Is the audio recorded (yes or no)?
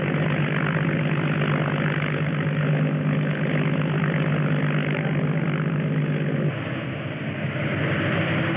yes